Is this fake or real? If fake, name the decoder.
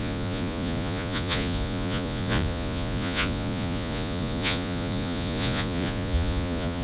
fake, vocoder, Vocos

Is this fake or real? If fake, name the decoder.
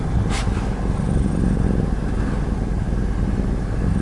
real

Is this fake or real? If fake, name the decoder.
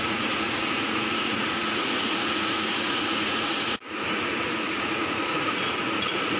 fake, vocoder, Vocos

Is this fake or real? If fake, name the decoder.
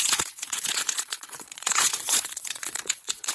fake, vocoder, Vocos